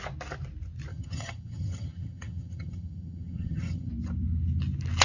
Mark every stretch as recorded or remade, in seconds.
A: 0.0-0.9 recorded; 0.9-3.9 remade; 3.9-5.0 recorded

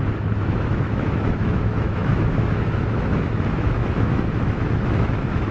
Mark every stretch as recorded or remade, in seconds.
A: 0.0-5.5 remade

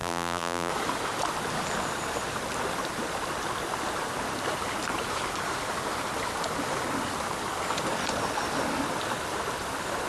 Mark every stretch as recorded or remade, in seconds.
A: 0.0-0.7 remade; 0.7-10.1 recorded

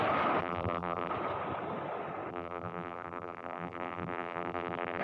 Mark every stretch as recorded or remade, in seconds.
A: 0.0-0.4 recorded; 0.4-1.1 remade; 1.1-2.3 recorded; 2.3-5.0 remade

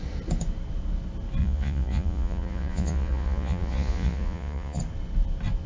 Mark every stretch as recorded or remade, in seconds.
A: 0.0-1.4 recorded; 1.4-4.8 remade; 4.8-5.7 recorded